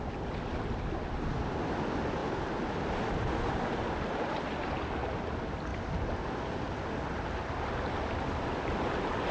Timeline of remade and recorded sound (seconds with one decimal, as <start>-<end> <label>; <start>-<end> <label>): 0.0-2.2 recorded; 2.2-5.0 remade; 5.0-9.3 recorded